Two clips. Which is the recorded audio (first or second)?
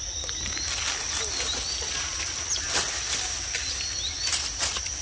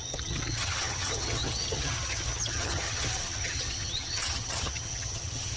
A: first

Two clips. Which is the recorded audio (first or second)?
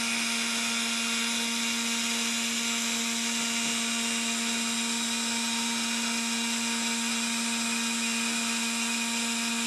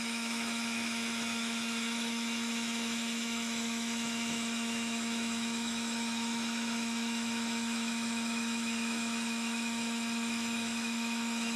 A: first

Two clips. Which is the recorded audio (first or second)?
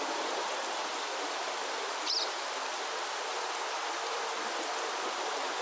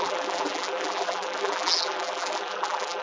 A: first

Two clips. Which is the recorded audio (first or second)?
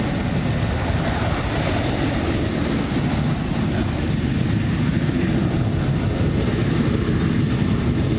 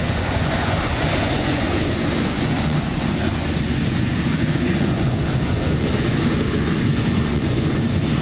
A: first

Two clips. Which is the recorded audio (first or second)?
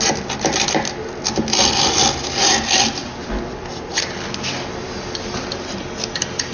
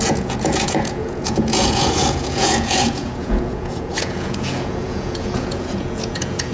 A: first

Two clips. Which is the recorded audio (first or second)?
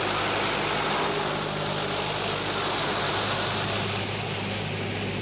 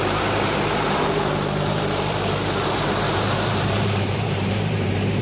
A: first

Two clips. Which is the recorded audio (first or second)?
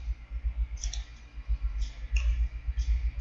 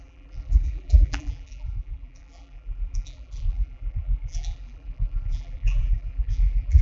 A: first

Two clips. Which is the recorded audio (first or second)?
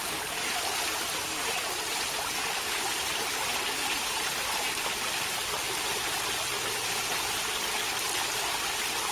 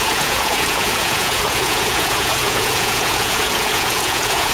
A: first